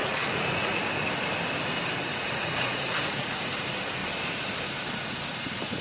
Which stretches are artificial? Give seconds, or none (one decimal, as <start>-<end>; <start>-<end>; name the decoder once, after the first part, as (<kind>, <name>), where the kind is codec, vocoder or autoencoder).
0.0-0.8 (vocoder, Vocos); 2.0-3.5